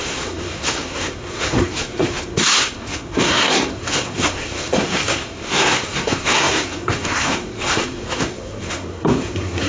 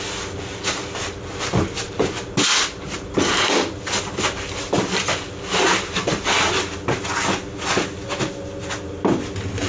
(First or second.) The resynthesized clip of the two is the first